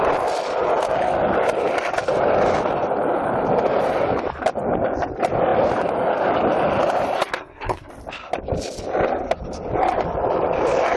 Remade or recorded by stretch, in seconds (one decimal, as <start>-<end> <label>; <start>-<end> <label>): 0.0-7.4 recorded; 7.4-7.9 remade; 7.9-11.0 recorded